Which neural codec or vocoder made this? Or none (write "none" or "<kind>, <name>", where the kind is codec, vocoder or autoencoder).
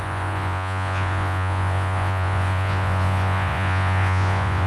vocoder, Vocos